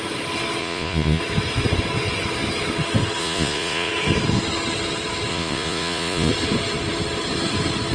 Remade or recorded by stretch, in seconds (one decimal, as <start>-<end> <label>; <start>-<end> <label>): 0.0-0.6 recorded; 0.6-1.2 remade; 1.2-3.2 recorded; 3.2-3.9 remade; 3.9-5.3 recorded; 5.3-6.3 remade; 6.3-7.9 recorded